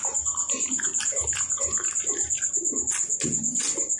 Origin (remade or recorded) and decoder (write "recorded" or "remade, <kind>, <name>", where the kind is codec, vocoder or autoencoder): recorded